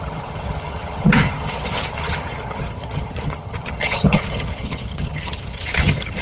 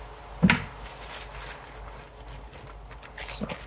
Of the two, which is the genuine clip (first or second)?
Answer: second